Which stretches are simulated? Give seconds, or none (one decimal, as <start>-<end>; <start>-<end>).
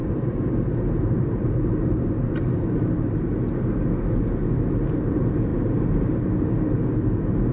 0.0-3.1; 5.5-6.2